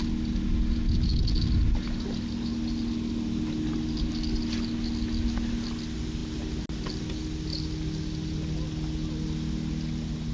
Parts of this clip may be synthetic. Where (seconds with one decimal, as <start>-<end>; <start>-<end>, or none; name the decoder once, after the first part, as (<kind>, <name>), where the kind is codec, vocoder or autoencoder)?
none